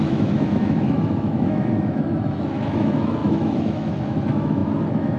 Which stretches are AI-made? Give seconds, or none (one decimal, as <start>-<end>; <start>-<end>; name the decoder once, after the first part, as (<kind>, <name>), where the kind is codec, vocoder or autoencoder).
0.0-5.2 (autoencoder, DAC-VAE)